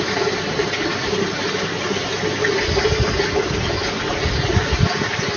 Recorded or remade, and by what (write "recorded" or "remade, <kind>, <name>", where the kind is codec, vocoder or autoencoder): recorded